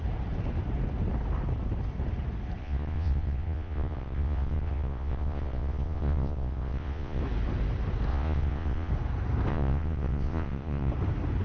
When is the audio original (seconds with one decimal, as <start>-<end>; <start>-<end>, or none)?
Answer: 0.0-2.6; 7.2-8.1; 8.9-9.5; 10.9-11.4